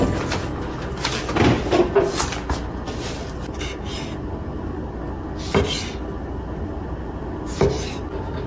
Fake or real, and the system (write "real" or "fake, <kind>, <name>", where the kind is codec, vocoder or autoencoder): real